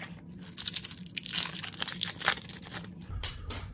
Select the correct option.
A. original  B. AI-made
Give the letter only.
A